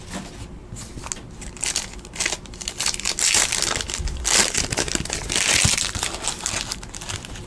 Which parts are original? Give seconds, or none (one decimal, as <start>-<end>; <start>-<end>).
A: 0.0-7.5